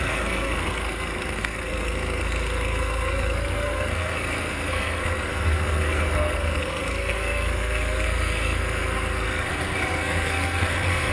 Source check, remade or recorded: remade